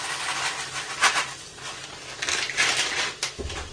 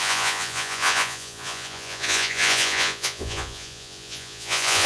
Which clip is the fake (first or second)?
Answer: second